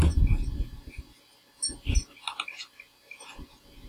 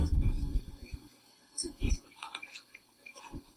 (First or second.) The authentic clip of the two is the first